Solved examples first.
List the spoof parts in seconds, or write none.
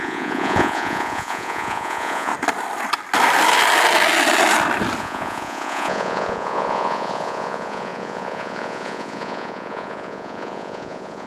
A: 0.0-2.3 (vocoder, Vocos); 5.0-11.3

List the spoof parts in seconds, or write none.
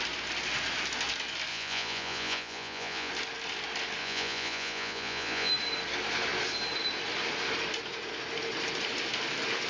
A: 1.5-3.1 (vocoder, Vocos); 4.0-5.5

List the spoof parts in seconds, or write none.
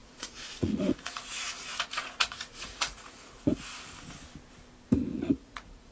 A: 0.0-3.5 (vocoder, Vocos); 5.1-5.9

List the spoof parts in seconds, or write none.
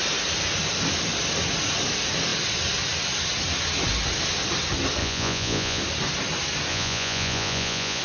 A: 5.0-5.8 (vocoder, Vocos); 6.7-8.0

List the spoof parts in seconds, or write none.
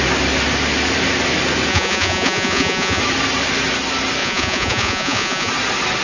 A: 1.7-3.0 (vocoder, Vocos); 4.2-5.5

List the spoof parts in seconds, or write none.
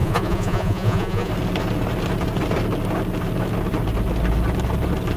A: 0.0-1.3 (vocoder, Vocos)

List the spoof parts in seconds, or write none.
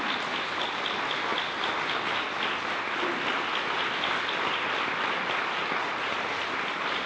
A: none